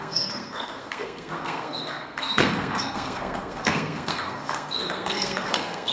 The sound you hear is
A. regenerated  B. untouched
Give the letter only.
A